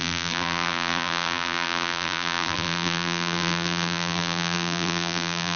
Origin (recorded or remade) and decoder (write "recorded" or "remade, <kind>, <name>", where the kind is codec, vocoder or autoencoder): remade, vocoder, BigVGAN v2